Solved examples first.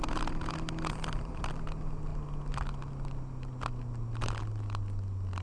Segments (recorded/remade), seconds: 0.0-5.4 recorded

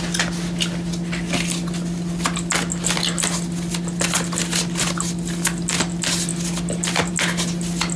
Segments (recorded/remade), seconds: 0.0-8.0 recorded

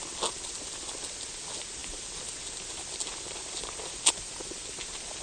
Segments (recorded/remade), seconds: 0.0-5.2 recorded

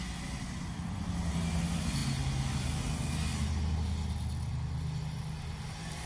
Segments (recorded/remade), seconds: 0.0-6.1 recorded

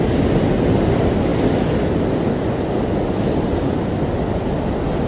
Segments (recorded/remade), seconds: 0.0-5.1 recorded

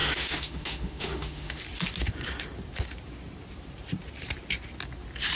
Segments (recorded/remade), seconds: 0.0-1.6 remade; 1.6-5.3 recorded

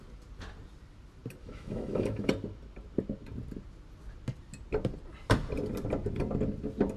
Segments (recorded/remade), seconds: 0.0-1.4 recorded; 1.4-2.3 remade; 2.3-7.0 recorded